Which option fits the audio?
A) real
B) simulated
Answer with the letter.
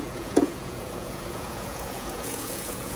B